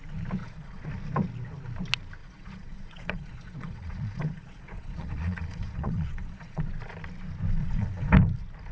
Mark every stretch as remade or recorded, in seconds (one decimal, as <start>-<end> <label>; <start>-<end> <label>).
0.0-0.4 recorded; 0.4-0.9 remade; 0.9-2.2 recorded; 2.2-6.6 remade; 6.6-7.6 recorded; 7.6-8.1 remade; 8.1-8.7 recorded